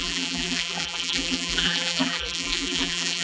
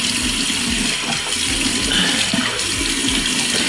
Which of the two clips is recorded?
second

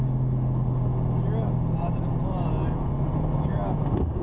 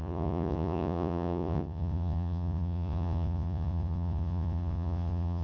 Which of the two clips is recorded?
first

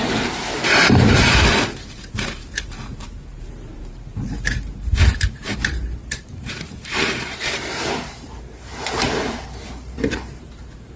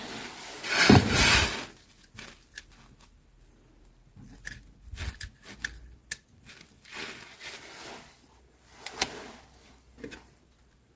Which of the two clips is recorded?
second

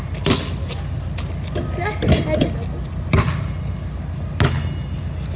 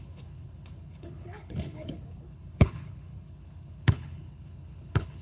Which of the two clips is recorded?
first